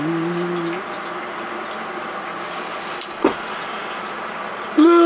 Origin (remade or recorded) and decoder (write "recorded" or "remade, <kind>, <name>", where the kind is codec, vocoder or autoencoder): recorded